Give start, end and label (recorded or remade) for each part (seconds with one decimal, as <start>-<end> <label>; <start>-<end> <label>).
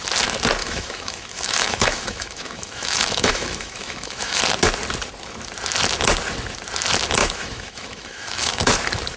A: 0.0-0.6 recorded; 0.6-4.4 remade; 4.4-7.2 recorded; 7.2-8.6 remade; 8.6-9.2 recorded